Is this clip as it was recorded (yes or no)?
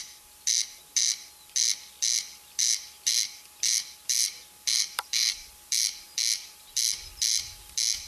no